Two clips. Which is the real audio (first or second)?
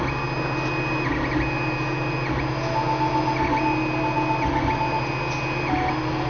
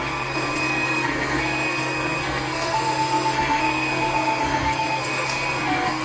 first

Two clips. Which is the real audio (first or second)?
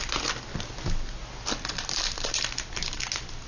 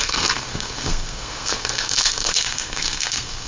first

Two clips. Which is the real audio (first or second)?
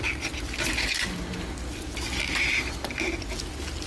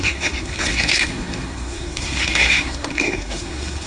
first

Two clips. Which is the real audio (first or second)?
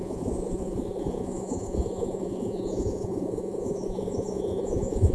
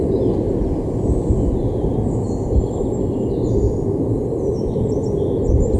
second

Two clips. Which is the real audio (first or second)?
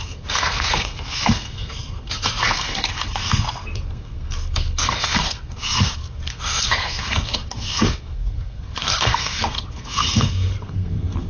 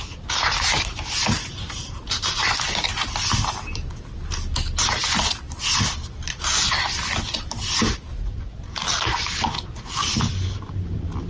second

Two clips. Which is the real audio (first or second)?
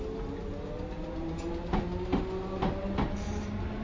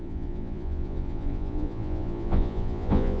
first